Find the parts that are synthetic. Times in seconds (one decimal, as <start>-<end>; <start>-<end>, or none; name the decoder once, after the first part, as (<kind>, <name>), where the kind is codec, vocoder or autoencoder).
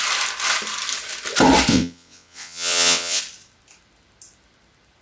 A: 1.7-3.2 (vocoder, WaveNeXt)